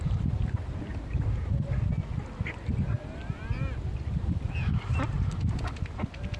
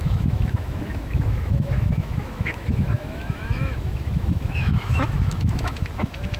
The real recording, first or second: first